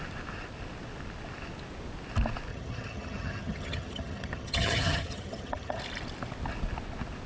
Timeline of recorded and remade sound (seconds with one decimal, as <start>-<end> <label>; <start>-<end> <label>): 0.0-2.5 recorded; 2.5-5.8 remade; 5.8-7.3 recorded